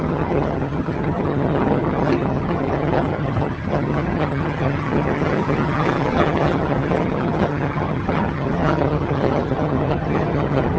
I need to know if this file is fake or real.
fake